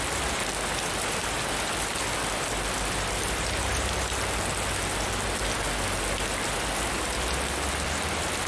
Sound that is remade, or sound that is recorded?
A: recorded